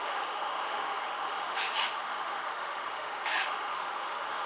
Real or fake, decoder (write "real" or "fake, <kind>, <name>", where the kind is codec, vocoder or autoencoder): fake, autoencoder, DAC-VAE